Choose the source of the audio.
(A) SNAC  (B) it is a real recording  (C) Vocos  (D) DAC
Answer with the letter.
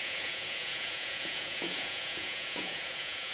C